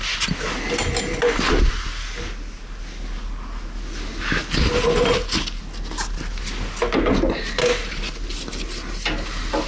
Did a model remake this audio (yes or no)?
no